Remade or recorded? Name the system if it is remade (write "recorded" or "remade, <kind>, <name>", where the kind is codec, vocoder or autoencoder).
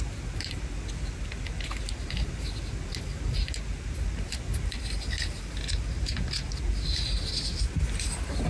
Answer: recorded